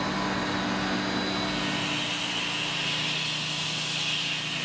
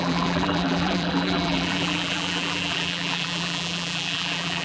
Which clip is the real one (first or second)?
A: first